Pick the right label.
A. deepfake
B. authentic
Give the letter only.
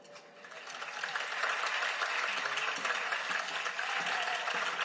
B